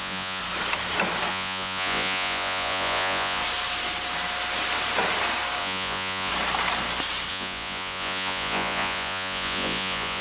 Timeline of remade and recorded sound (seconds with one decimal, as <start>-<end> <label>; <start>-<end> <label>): 0.0-0.4 remade; 0.4-1.3 recorded; 1.3-3.4 remade; 3.4-5.6 recorded; 5.6-6.3 remade; 6.3-7.3 recorded; 7.3-10.2 remade